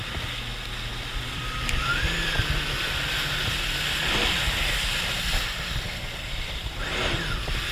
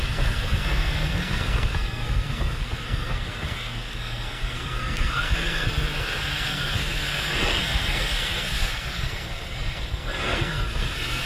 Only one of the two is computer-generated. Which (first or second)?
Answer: second